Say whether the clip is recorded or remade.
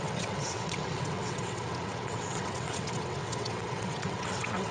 remade